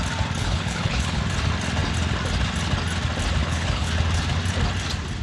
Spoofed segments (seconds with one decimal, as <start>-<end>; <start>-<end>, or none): 0.4-1.2; 3.4-3.9